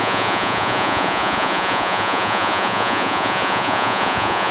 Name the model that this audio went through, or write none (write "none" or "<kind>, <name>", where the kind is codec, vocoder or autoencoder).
vocoder, Vocos